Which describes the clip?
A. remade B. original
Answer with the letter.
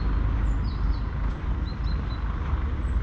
B